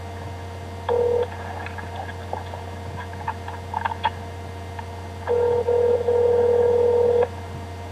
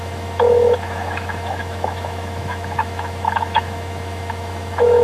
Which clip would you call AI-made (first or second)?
second